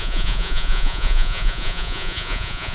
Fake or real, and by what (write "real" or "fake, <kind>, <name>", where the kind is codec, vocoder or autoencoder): fake, vocoder, Vocos